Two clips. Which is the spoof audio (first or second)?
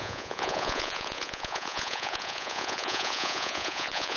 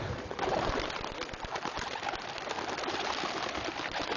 first